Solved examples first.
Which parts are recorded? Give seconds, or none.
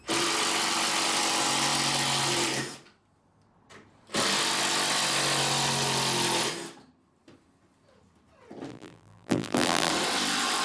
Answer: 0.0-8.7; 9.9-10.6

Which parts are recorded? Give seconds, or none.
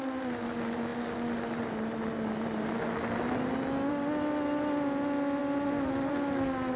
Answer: 0.0-6.8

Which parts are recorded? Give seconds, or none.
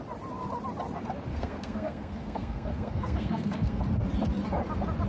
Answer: 0.0-1.3; 3.8-5.1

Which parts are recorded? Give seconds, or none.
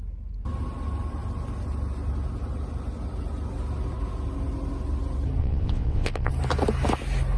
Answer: 0.0-5.4; 6.3-7.4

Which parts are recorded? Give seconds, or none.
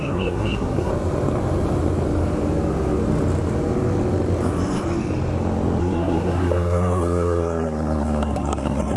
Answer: 0.9-5.8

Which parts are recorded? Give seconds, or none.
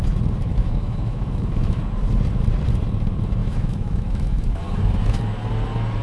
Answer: 0.0-0.5; 1.8-3.4; 4.6-6.0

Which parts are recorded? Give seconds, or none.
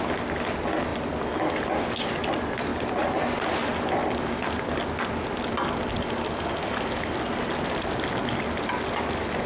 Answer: 0.0-9.5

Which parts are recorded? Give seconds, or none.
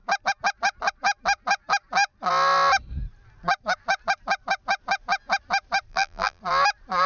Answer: 0.0-5.9; 6.4-7.1